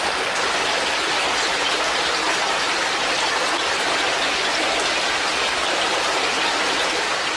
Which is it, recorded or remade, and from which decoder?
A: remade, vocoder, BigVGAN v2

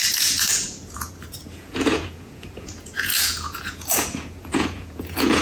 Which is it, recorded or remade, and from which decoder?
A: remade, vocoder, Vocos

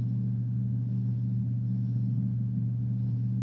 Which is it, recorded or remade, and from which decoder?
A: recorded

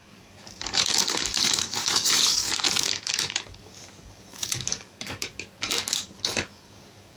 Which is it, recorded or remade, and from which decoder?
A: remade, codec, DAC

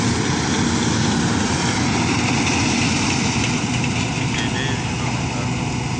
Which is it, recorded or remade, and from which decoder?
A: recorded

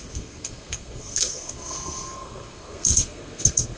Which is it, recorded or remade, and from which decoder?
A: remade, codec, SNAC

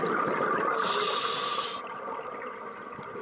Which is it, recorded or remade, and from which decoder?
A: recorded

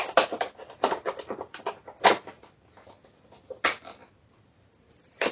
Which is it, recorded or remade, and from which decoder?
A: remade, vocoder, BigVGAN v2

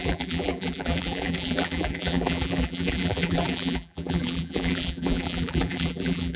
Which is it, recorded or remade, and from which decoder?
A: remade, vocoder, BigVGAN v2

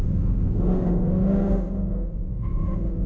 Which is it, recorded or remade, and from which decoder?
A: remade, autoencoder, DAC-VAE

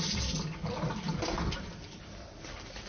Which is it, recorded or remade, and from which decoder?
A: recorded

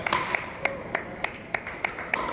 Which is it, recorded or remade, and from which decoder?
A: recorded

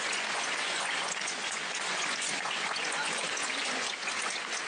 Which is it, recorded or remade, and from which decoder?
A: remade, vocoder, Vocos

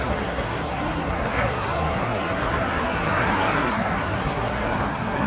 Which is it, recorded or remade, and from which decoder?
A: remade, codec, SNAC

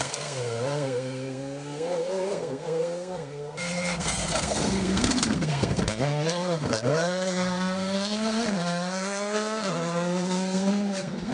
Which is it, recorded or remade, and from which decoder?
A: remade, codec, SNAC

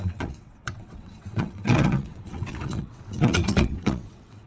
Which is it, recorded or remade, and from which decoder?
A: remade, vocoder, WaveNeXt